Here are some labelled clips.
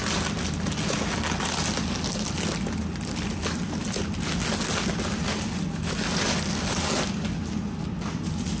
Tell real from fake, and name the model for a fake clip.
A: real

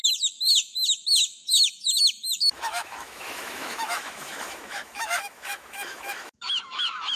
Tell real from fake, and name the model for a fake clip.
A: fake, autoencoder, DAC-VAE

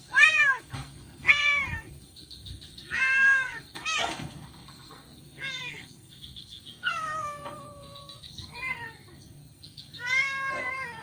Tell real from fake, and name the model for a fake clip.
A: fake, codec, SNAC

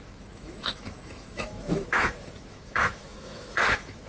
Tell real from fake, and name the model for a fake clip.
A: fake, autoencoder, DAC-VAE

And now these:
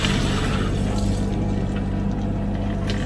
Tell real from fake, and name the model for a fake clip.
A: real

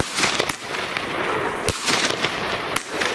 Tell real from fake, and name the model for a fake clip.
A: real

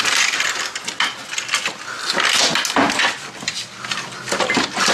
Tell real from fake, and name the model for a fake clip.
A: real